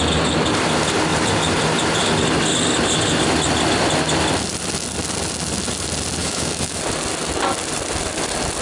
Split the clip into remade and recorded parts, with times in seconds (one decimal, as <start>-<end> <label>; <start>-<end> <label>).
0.0-6.2 recorded; 6.2-6.8 remade; 6.8-8.6 recorded